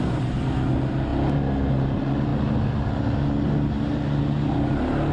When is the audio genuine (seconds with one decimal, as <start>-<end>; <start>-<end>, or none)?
0.0-5.1